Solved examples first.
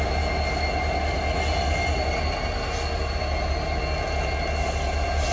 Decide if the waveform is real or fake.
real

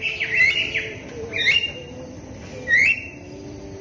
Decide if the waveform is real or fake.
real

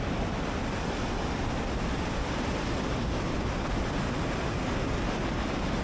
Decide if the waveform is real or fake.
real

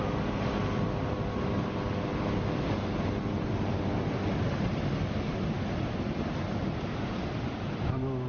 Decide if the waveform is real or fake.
real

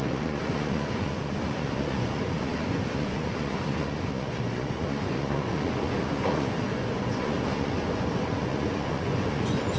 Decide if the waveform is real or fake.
fake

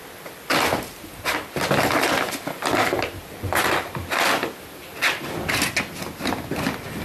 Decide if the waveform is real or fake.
real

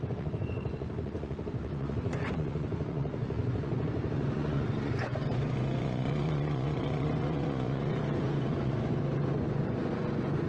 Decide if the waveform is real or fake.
fake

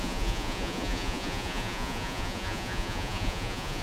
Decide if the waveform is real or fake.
fake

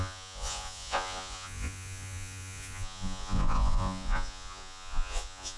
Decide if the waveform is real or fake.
fake